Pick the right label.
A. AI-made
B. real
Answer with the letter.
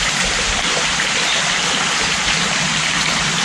B